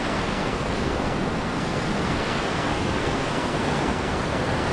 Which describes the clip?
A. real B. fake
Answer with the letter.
B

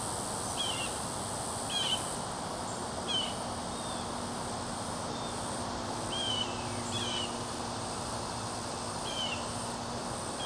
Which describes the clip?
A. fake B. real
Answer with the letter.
B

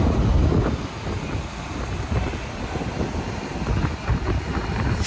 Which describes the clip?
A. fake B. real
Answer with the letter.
B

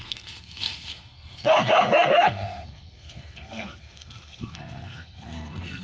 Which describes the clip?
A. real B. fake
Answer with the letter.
B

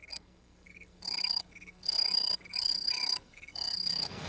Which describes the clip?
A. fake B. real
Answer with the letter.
A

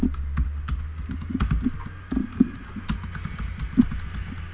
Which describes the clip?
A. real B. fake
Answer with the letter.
A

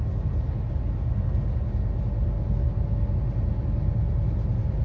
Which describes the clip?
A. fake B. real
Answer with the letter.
B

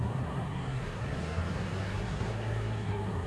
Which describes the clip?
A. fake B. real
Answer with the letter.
A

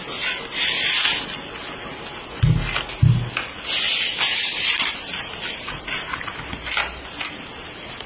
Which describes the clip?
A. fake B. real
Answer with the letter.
B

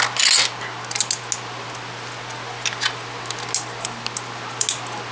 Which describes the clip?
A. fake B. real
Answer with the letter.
B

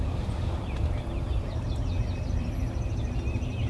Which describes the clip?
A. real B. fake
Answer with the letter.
A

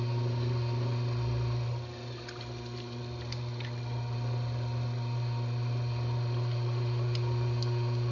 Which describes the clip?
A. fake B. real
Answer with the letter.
B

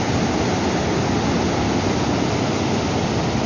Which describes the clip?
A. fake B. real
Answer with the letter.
B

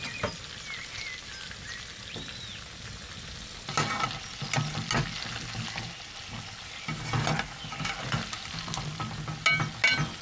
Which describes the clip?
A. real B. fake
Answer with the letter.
A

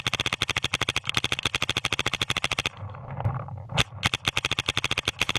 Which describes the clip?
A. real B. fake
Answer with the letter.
A